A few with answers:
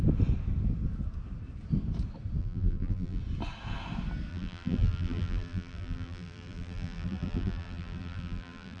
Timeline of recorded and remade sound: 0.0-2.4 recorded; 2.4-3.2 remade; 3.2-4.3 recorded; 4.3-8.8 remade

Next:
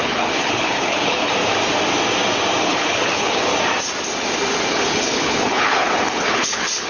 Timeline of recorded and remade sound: 0.0-1.3 remade; 1.3-2.6 recorded; 2.6-3.5 remade; 3.5-4.7 recorded; 4.7-6.9 remade

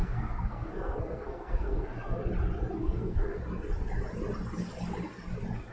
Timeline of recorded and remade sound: 0.0-2.2 remade; 2.2-2.8 recorded; 2.8-3.4 remade; 3.4-5.7 recorded

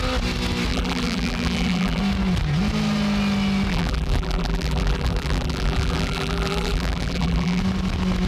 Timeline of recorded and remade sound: 0.0-0.7 recorded; 0.7-2.0 remade; 2.0-3.7 recorded; 3.7-7.6 remade; 7.6-8.3 recorded

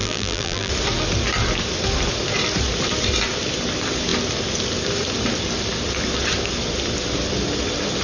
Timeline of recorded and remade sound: 0.0-0.7 remade; 0.7-8.0 recorded

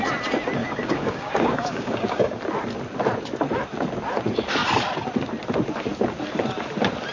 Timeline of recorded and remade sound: 0.0-0.6 recorded; 0.6-2.4 remade; 2.4-7.1 recorded

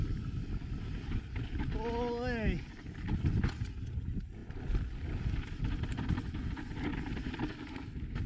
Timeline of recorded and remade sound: 0.0-8.3 recorded